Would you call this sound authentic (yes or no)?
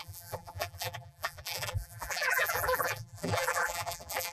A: no